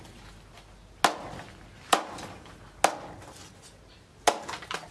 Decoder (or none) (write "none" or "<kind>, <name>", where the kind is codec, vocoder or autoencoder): none